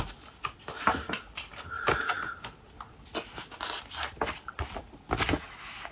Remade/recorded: recorded